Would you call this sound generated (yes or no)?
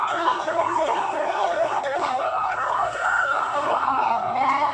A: yes